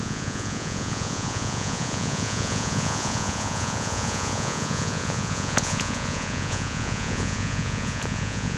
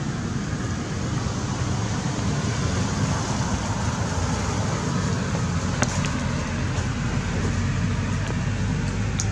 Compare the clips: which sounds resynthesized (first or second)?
first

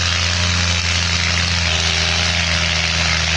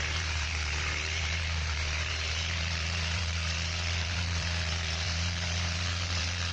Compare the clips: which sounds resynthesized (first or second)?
second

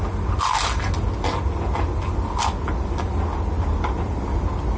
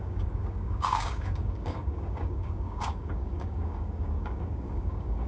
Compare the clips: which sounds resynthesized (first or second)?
second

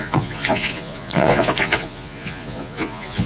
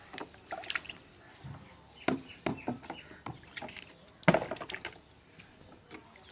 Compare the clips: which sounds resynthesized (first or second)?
first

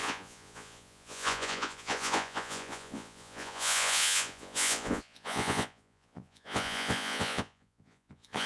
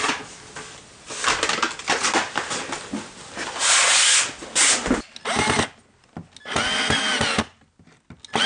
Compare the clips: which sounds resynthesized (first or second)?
first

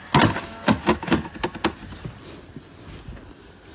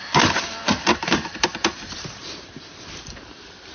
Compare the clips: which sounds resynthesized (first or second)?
second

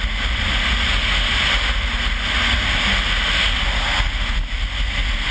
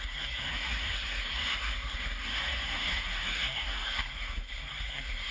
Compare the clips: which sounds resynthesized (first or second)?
second